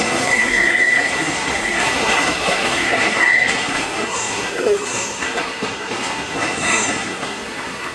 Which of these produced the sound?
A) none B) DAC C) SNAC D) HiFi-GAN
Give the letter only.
C